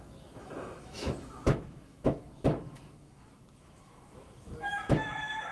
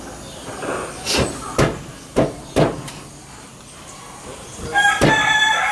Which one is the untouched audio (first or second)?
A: second